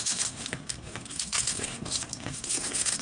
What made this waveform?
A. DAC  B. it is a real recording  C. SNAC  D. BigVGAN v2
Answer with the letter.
C